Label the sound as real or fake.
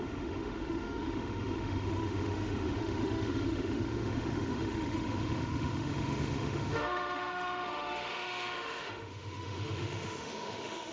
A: fake